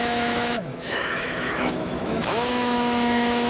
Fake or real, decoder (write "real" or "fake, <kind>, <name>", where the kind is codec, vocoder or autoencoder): fake, autoencoder, DAC-VAE